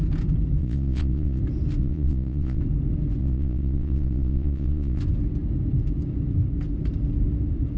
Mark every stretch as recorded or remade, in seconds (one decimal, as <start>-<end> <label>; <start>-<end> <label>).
0.0-0.6 recorded; 0.6-1.4 remade; 1.4-1.8 recorded; 1.8-2.6 remade; 2.6-3.2 recorded; 3.2-5.0 remade; 5.0-7.8 recorded